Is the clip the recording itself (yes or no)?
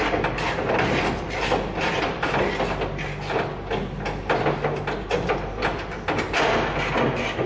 yes